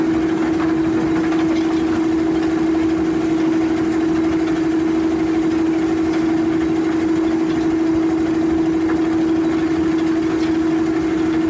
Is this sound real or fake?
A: real